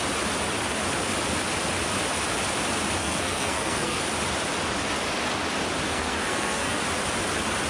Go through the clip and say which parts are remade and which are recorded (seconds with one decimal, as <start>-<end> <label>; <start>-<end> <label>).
0.0-3.0 recorded; 3.0-4.0 remade; 4.0-5.9 recorded; 5.9-6.8 remade; 6.8-7.7 recorded

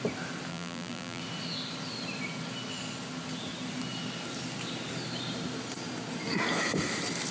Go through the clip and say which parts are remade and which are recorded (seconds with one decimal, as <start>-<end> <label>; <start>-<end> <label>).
0.0-0.5 recorded; 0.5-1.2 remade; 1.2-7.3 recorded

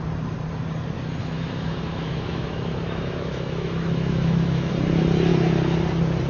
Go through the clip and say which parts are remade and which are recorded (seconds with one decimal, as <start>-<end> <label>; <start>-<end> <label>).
0.0-1.2 recorded; 1.2-4.7 remade; 4.7-6.3 recorded